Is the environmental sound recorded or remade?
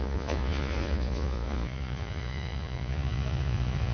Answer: remade